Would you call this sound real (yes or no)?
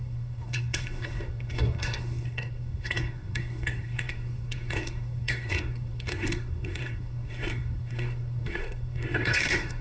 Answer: no